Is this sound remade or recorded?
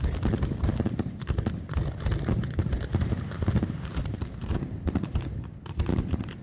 recorded